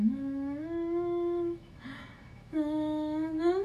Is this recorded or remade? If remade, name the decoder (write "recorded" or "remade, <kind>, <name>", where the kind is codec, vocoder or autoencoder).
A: remade, autoencoder, DAC-VAE